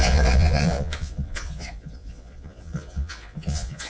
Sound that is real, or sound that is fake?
fake